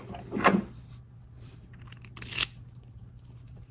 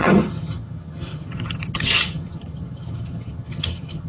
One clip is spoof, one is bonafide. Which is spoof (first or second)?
second